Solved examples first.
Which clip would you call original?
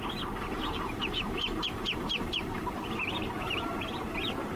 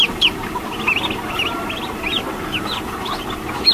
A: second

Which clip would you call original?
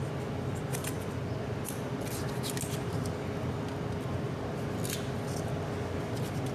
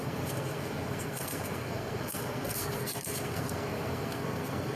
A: first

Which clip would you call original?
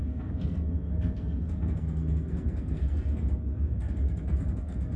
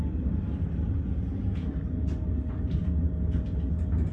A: second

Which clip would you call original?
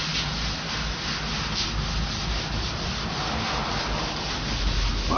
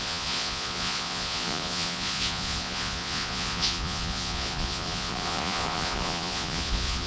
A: first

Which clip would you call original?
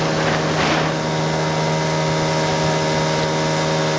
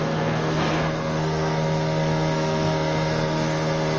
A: first